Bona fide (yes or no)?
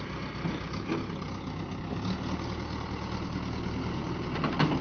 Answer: yes